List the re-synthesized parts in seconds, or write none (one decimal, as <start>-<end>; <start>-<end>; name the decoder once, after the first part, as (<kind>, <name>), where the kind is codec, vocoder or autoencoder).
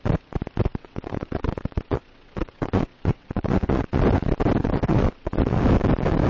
0.7-4.0 (vocoder, WaveNeXt); 4.6-5.6